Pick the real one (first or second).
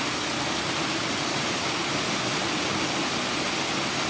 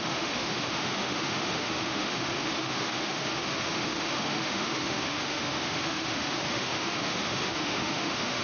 first